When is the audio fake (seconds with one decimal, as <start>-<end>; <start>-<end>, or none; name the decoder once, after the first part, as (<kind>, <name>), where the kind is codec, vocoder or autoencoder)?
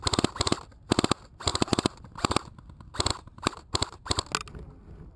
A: 1.5-2.0 (vocoder, BigVGAN v2); 3.1-4.2